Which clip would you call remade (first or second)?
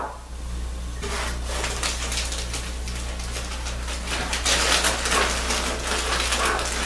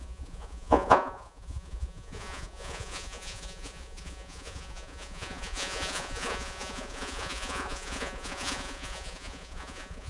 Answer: second